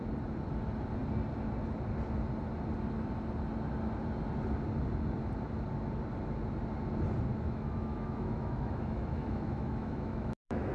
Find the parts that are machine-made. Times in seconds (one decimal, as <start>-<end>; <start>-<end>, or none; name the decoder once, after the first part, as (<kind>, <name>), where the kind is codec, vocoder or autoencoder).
7.3-10.7 (autoencoder, DAC-VAE)